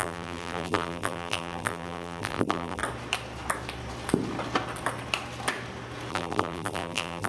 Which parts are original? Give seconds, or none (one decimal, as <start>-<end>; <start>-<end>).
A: 2.8-6.1